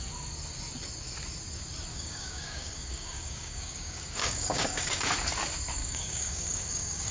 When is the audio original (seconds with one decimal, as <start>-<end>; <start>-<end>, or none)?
0.0-1.9; 5.1-5.8